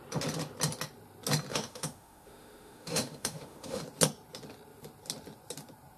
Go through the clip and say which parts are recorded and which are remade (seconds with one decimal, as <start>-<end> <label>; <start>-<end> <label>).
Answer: 0.0-1.5 recorded; 1.5-3.8 remade; 3.8-6.0 recorded